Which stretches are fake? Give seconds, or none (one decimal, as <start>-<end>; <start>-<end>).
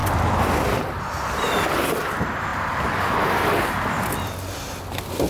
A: none